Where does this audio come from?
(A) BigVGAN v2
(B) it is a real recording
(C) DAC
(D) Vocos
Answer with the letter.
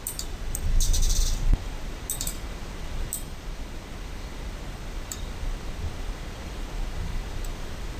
B